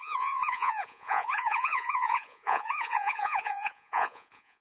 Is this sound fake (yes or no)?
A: yes